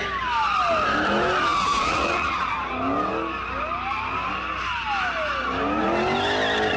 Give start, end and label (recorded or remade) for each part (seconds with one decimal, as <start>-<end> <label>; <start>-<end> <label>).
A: 0.0-1.5 recorded; 1.5-2.5 remade; 2.5-6.8 recorded